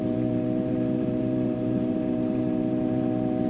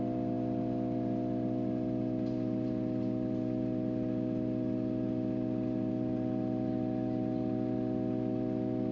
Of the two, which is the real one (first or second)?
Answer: second